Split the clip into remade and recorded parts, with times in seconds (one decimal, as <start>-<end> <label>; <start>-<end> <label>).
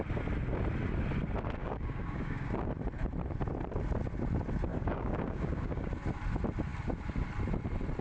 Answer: 0.0-1.6 recorded; 1.6-2.7 remade; 2.7-4.7 recorded; 4.7-5.9 remade; 5.9-8.0 recorded